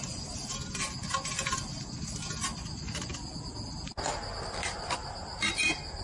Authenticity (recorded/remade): recorded